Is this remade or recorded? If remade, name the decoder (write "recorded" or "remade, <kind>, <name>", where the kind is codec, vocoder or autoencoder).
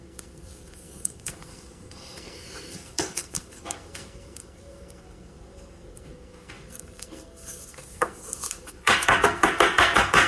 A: remade, codec, SNAC